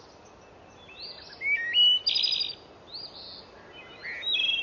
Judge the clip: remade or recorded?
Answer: recorded